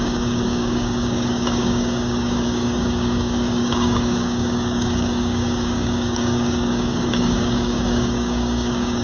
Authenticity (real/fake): fake